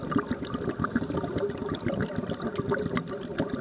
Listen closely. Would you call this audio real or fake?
real